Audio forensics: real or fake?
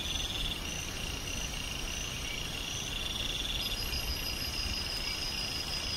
real